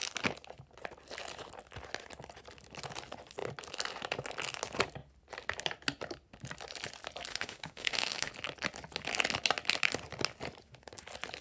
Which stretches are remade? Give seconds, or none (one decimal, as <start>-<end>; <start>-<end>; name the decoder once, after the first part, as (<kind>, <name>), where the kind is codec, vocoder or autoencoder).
7.3-8.3 (autoencoder, DAC-VAE)